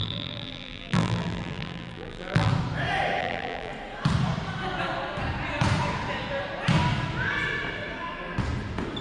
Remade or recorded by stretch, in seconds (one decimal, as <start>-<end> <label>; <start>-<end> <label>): 0.0-2.5 remade; 2.5-3.2 recorded; 3.2-3.7 remade; 3.7-9.0 recorded